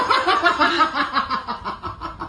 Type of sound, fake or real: real